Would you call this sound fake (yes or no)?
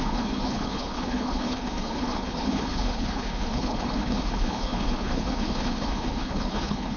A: yes